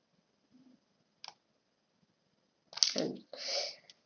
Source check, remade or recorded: recorded